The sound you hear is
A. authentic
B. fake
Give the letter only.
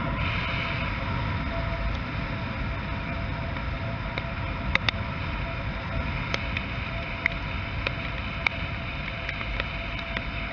A